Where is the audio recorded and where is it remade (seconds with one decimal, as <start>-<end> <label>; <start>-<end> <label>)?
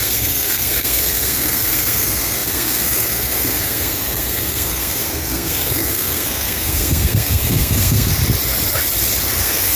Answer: 0.0-8.1 remade; 8.1-9.4 recorded; 9.4-9.8 remade